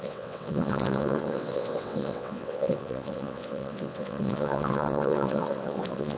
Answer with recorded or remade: remade